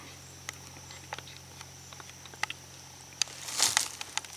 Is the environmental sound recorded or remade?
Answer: recorded